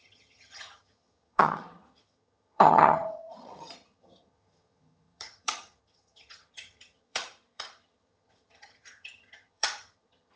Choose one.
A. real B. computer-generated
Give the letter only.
B